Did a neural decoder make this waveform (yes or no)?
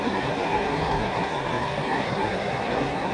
yes